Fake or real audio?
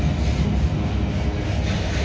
real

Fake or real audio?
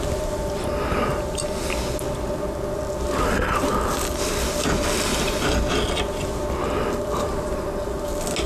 real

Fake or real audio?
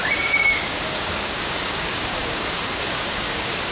fake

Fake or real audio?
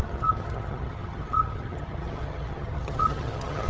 fake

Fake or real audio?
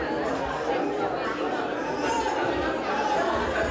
real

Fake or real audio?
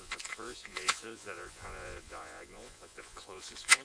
fake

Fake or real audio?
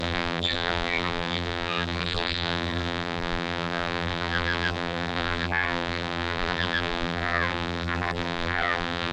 fake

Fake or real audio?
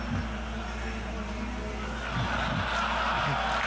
real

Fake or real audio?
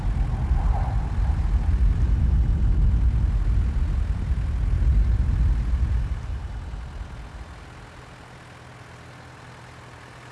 real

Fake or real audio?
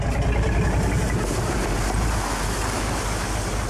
real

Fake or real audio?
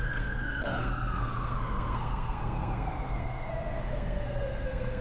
fake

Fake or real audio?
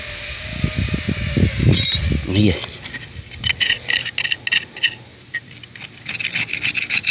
real